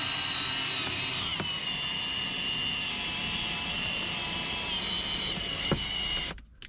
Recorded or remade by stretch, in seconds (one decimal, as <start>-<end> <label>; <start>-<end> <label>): 0.0-6.7 recorded